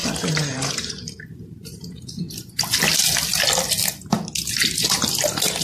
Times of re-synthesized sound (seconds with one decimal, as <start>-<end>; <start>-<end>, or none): 0.0-2.3